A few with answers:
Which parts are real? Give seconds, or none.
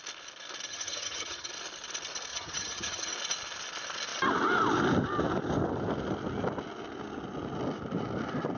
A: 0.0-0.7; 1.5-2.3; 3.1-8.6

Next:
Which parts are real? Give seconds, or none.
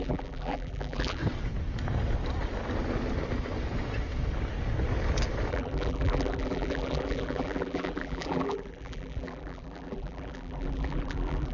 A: 1.2-5.5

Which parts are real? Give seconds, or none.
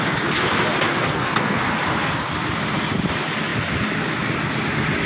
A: 0.0-1.0; 1.6-5.1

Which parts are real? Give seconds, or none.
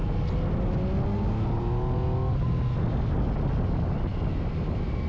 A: 0.0-5.1